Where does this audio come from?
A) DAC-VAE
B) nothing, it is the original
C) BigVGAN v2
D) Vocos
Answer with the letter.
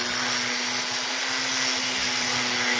B